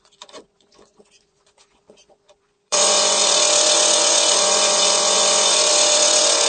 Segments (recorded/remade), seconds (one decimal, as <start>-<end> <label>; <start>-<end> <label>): 0.0-6.5 remade